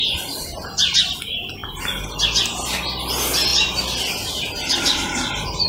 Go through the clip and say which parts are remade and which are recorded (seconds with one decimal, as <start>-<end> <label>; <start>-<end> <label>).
0.0-3.5 recorded; 3.5-5.7 remade